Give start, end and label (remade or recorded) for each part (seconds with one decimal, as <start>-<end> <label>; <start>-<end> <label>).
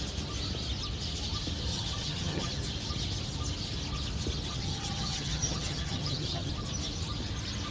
0.0-1.7 recorded; 1.7-2.5 remade; 2.5-4.5 recorded; 4.5-6.5 remade; 6.5-7.7 recorded